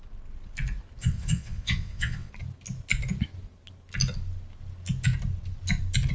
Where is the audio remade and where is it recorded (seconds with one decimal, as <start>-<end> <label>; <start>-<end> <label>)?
0.0-1.0 recorded; 1.0-2.3 remade; 2.3-6.1 recorded